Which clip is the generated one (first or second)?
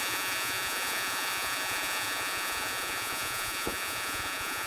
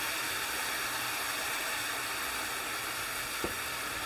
first